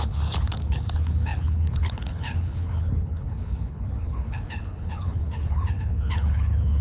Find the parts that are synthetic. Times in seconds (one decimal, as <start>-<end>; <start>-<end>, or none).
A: 0.0-6.8